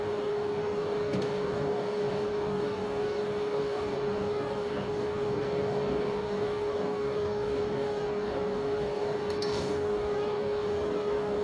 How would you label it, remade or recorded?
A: remade